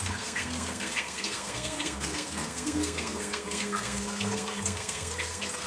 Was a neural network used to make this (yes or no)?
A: yes